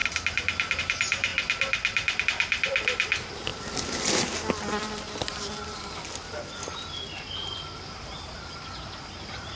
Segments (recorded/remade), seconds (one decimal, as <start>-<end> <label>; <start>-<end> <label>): 0.0-0.8 recorded; 0.8-1.3 remade; 1.3-2.2 recorded; 2.2-3.5 remade; 3.5-8.4 recorded; 8.4-9.6 remade